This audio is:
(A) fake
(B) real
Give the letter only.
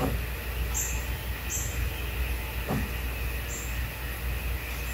B